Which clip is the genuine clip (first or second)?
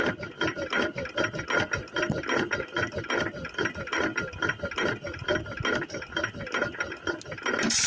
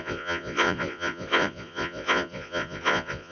first